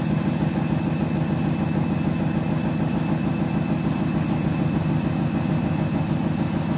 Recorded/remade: recorded